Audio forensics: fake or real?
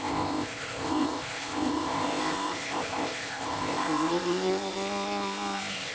fake